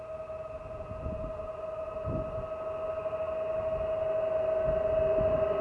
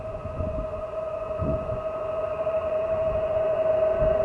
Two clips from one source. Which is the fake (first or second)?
second